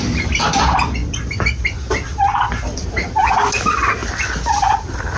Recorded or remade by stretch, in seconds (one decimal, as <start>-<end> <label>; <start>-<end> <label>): 0.0-1.0 recorded; 1.0-3.2 remade; 3.2-4.0 recorded; 4.0-5.2 remade